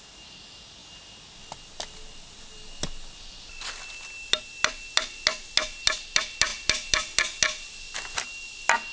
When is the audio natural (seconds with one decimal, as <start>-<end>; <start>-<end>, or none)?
0.0-8.9